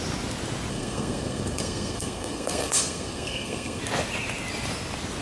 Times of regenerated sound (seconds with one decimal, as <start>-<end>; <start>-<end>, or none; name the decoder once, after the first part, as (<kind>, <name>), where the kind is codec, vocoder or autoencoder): 0.7-3.8 (codec, SNAC)